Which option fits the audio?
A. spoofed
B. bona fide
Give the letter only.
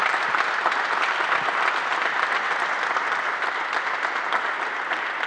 B